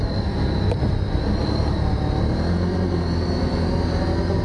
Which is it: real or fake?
real